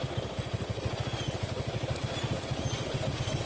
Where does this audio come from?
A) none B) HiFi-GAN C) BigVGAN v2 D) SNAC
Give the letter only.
A